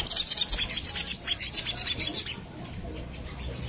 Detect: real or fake real